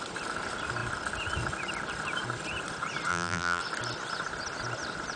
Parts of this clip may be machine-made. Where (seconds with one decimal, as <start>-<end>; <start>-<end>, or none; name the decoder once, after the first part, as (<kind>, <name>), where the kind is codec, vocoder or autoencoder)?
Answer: 3.1-3.6 (vocoder, BigVGAN v2)

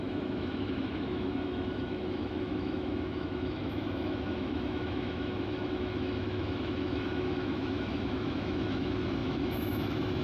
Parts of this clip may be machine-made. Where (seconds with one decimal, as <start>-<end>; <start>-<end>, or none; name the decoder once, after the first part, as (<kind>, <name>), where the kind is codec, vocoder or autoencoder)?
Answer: 0.0-10.2 (autoencoder, DAC-VAE)